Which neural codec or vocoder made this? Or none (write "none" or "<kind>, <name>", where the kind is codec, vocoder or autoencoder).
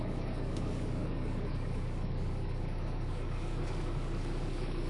codec, DAC